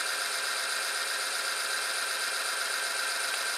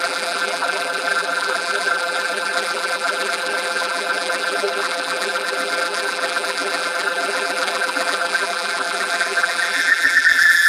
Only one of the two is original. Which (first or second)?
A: first